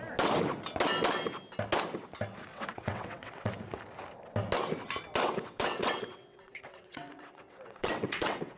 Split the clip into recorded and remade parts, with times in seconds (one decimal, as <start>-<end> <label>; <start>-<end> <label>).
0.0-2.5 recorded; 2.5-3.5 remade; 3.5-5.2 recorded; 5.2-8.6 remade